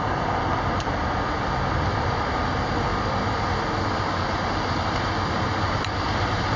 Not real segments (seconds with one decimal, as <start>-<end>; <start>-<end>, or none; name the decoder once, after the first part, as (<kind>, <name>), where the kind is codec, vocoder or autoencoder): none